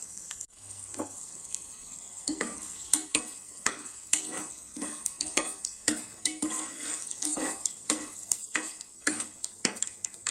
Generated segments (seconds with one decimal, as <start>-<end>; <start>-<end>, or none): 0.0-10.3